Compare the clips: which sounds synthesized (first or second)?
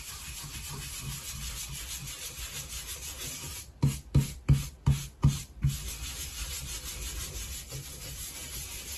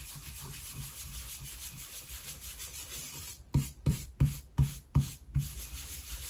second